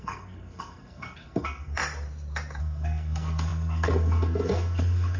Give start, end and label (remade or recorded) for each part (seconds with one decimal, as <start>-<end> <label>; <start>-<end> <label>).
0.0-1.8 remade; 1.8-2.6 recorded; 2.6-5.2 remade